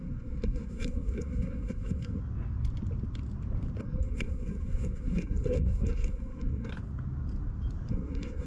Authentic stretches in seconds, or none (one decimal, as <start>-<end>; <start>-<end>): 2.2-3.8; 6.7-7.9